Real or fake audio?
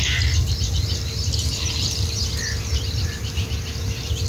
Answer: real